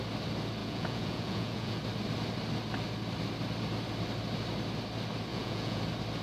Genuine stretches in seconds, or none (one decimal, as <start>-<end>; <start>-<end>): 0.0-0.6; 1.8-5.3; 5.8-6.2